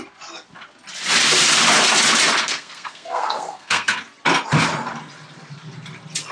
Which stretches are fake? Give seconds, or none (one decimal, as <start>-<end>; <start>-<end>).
2.4-4.0